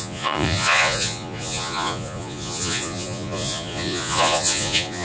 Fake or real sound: fake